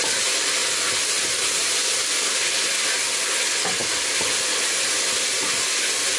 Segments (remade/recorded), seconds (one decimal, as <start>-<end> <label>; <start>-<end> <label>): 0.0-6.2 recorded